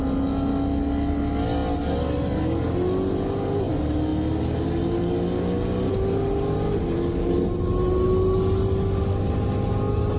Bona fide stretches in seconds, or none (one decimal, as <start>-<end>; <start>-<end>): 0.0-10.2